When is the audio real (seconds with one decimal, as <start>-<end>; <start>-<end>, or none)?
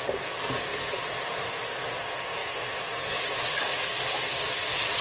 0.0-0.7; 1.9-2.4